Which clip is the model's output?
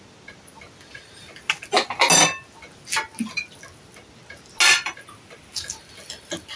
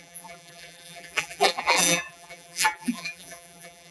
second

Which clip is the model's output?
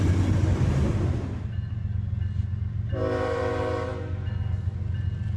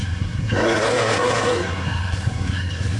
second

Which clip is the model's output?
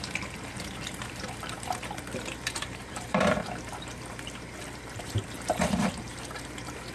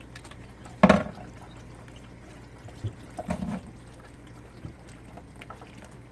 first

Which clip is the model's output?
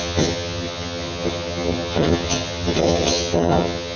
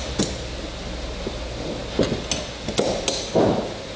first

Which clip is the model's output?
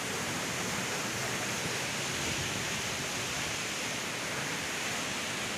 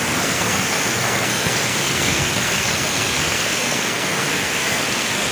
second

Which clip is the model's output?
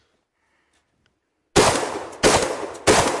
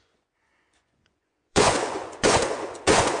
second